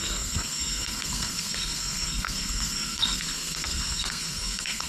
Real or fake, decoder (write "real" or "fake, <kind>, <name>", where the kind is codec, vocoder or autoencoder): fake, codec, SNAC